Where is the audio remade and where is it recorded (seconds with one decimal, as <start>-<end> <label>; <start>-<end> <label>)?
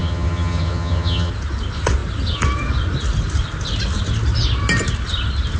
0.0-1.3 remade; 1.3-5.6 recorded